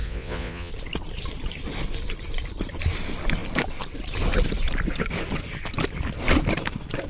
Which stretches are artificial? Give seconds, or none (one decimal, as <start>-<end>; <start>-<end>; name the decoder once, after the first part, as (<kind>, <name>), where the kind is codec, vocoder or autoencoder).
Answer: 0.0-0.7 (vocoder, Vocos)